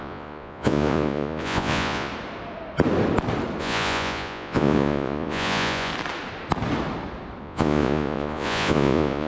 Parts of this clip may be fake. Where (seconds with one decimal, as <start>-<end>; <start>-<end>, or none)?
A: 0.0-2.1; 3.6-5.9; 7.4-9.3